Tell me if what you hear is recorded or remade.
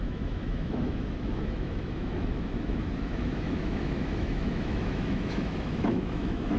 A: remade